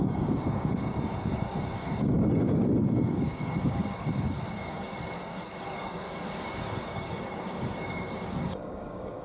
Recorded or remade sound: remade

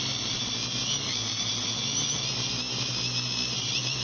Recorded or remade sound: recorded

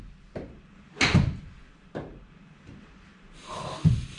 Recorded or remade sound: recorded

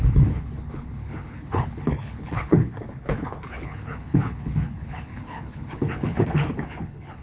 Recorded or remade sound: remade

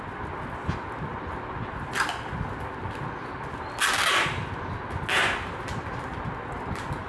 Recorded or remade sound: recorded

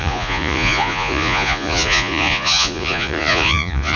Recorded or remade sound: remade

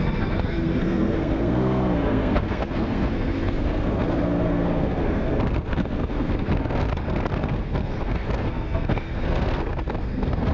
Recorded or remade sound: remade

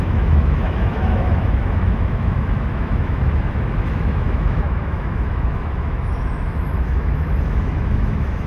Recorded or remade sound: remade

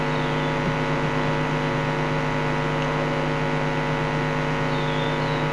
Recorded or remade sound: recorded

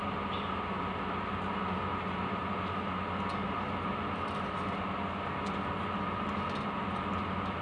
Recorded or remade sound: recorded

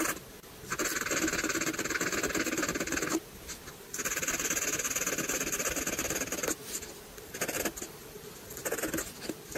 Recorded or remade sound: recorded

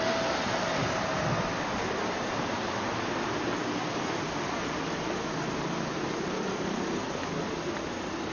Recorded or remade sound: recorded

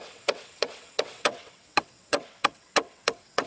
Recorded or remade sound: remade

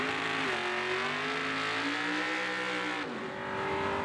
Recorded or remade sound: recorded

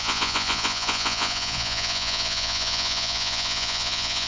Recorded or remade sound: remade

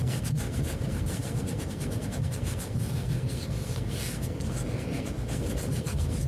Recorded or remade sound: remade